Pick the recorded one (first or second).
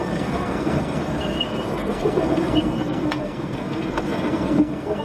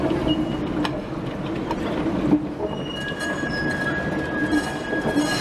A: second